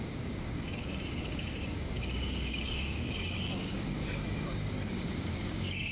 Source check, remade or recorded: remade